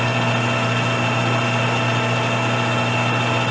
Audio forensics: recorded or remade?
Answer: recorded